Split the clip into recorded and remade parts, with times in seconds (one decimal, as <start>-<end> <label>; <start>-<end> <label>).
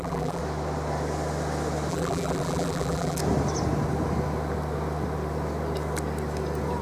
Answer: 0.0-0.4 remade; 0.4-1.9 recorded; 1.9-3.2 remade; 3.2-6.8 recorded